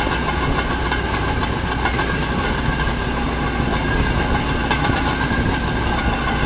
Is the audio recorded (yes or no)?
yes